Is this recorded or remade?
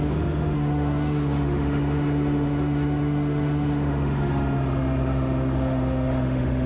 remade